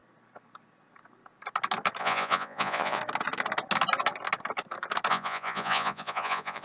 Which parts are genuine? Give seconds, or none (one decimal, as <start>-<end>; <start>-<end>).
0.0-2.0; 3.0-5.1